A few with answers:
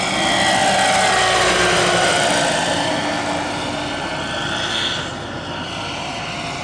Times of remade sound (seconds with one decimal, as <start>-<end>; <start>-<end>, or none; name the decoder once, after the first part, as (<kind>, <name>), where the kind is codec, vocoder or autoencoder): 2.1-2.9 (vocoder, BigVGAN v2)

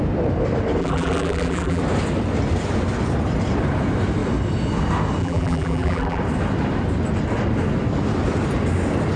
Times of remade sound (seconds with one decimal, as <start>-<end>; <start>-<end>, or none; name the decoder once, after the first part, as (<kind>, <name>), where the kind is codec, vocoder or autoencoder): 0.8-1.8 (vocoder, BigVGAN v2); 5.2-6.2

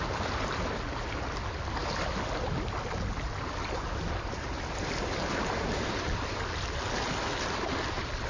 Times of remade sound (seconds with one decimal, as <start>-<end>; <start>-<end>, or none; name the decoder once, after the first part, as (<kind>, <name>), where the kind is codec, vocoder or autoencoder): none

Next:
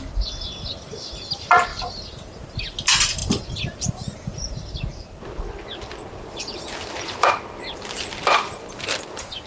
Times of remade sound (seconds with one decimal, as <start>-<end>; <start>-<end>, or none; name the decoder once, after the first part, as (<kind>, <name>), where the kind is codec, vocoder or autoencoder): 3.2-7.3 (vocoder, BigVGAN v2)